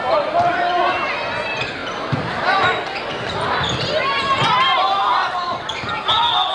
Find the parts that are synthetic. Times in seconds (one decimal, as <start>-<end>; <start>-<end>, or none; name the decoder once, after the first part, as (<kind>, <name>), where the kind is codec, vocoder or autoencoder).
none